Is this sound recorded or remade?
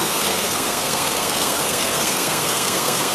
remade